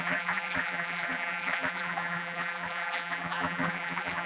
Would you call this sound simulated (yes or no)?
yes